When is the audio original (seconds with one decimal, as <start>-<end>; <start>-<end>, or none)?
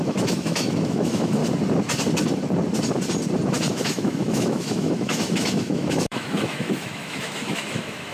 1.4-3.7